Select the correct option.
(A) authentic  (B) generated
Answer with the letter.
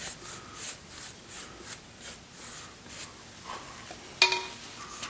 A